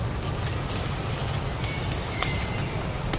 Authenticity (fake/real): real